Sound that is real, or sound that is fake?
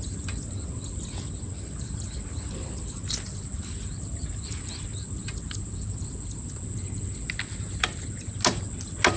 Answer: real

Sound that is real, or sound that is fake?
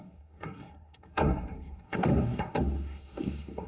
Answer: fake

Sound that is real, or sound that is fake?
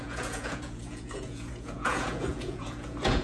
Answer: fake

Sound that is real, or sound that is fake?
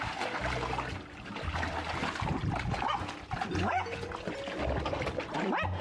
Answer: real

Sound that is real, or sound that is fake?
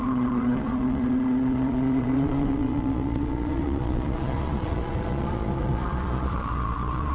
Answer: fake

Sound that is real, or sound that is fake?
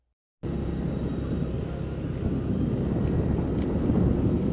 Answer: real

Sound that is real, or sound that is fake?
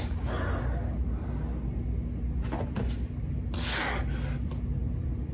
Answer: real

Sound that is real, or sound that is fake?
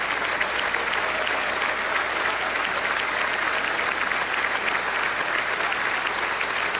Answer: real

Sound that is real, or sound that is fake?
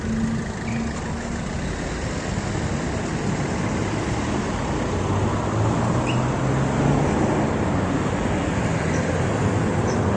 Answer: real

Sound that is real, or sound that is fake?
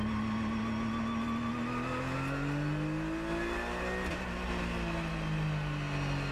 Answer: real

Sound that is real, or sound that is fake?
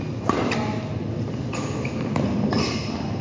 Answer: real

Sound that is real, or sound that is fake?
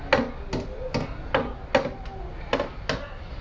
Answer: real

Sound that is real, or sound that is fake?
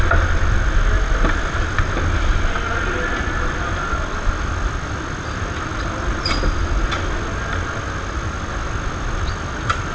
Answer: real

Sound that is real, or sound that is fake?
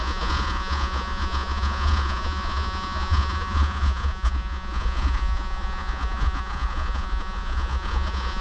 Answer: fake